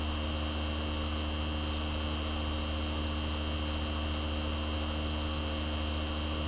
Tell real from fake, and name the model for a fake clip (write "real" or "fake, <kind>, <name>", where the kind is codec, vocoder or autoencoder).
real